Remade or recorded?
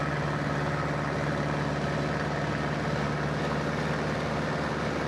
recorded